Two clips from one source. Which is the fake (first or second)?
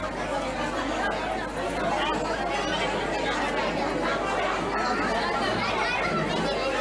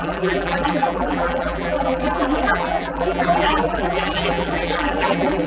second